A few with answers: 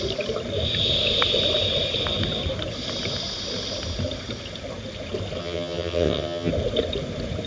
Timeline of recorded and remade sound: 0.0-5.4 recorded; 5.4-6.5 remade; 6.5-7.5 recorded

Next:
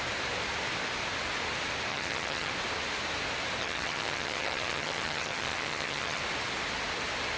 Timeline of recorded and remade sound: 0.0-1.9 recorded; 1.9-2.5 remade; 2.5-3.6 recorded; 3.6-6.2 remade; 6.2-7.4 recorded

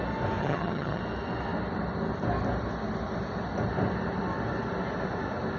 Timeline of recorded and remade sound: 0.0-0.4 recorded; 0.4-1.0 remade; 1.0-5.6 recorded

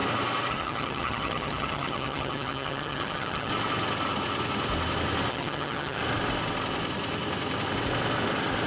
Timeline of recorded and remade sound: 0.0-0.5 recorded; 0.5-3.5 remade; 3.5-5.3 recorded; 5.3-6.0 remade; 6.0-8.7 recorded